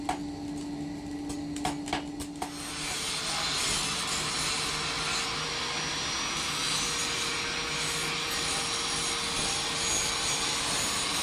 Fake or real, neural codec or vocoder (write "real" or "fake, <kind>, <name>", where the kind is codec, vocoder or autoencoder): real